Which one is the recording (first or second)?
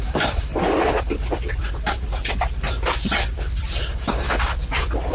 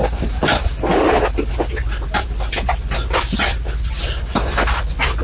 second